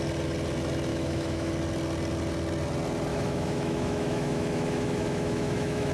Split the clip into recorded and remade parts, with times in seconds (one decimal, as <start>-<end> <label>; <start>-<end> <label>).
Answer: 0.0-0.9 recorded; 0.9-1.5 remade; 1.5-3.1 recorded; 3.1-5.9 remade